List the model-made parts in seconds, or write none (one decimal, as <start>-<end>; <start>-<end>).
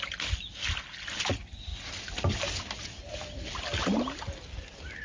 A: none